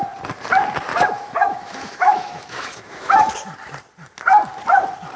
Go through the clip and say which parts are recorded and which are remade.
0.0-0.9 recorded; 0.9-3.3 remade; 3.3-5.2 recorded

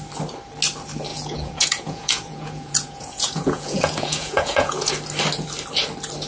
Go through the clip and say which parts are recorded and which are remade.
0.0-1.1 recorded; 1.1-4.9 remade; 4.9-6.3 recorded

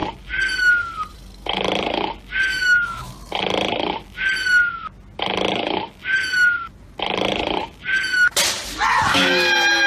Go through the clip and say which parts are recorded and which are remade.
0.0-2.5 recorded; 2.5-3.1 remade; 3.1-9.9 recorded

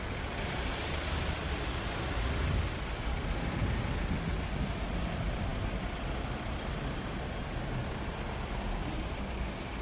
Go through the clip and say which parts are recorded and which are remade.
0.0-9.8 recorded

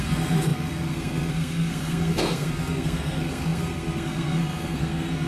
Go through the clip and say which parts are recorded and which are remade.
0.0-5.3 remade

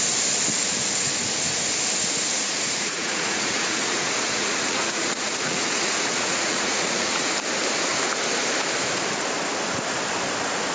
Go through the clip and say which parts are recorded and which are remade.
0.0-2.3 recorded; 2.3-7.3 remade; 7.3-10.7 recorded

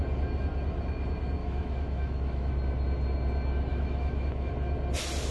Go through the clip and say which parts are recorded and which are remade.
0.0-1.4 recorded; 1.4-2.5 remade; 2.5-3.7 recorded; 3.7-4.5 remade; 4.5-5.3 recorded

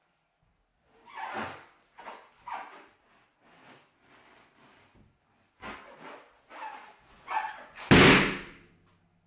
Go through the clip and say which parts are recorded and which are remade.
0.0-7.1 recorded; 7.1-7.9 remade; 7.9-9.3 recorded